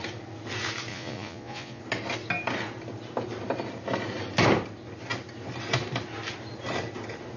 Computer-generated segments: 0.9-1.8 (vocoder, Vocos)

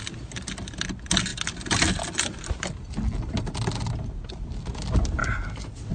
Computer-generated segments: none

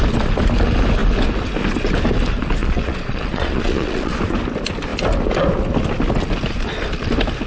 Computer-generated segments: 2.6-4.2 (vocoder, Vocos)

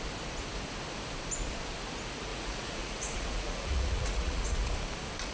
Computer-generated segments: 2.3-4.7 (vocoder, Vocos)